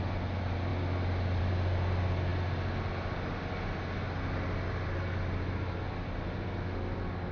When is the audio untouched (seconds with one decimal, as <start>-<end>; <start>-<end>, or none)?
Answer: 0.0-7.3